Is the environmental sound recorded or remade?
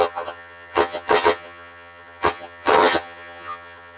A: remade